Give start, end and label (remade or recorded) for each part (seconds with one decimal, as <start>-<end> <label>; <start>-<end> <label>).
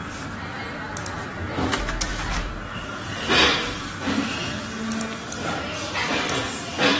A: 0.0-1.3 recorded; 1.3-2.5 remade; 2.5-7.0 recorded